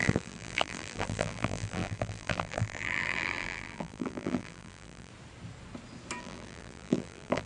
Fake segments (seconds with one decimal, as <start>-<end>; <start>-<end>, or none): 0.0-5.1; 6.2-7.5